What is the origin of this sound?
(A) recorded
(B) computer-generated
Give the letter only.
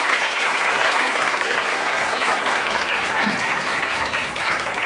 B